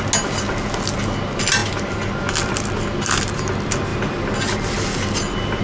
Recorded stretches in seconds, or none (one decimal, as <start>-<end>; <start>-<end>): 0.0-5.6